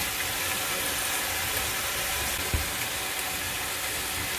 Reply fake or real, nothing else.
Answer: real